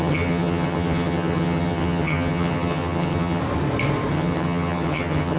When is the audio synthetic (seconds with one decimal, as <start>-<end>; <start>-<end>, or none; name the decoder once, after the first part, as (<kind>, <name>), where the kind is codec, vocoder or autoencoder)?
0.0-3.4 (vocoder, HiFi-GAN); 4.1-5.4